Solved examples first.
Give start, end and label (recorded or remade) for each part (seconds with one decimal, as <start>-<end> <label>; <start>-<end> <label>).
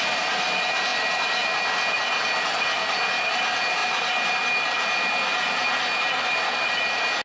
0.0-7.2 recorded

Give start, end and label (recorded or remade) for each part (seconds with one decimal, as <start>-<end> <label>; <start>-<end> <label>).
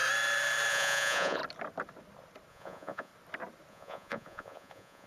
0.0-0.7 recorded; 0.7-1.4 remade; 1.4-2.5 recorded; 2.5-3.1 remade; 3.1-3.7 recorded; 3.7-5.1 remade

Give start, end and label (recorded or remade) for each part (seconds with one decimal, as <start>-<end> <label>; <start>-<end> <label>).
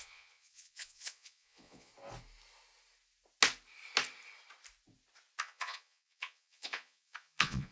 0.0-1.9 remade; 1.9-5.4 recorded; 5.4-7.7 remade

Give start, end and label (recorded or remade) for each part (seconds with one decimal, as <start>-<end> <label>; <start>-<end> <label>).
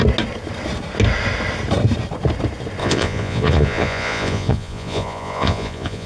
0.0-2.8 recorded; 2.8-6.1 remade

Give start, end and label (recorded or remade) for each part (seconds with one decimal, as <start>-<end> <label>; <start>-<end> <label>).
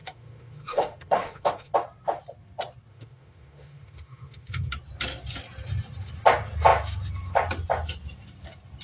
0.0-1.7 remade; 1.7-2.9 recorded; 2.9-4.7 remade; 4.7-8.8 recorded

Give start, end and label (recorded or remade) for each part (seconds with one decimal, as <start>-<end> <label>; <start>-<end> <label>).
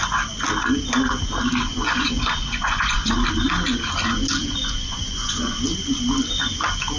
0.0-1.7 recorded; 1.7-3.1 remade; 3.1-4.4 recorded; 4.4-5.6 remade; 5.6-7.0 recorded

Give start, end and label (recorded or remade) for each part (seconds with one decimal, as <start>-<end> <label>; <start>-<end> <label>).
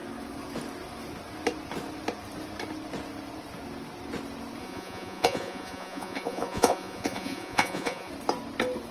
0.0-4.6 recorded; 4.6-8.1 remade; 8.1-8.9 recorded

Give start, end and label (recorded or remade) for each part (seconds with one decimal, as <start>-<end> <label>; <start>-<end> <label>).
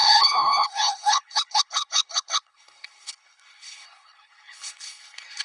0.0-5.4 remade